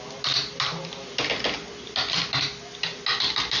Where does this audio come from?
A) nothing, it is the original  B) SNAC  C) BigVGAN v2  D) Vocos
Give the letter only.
A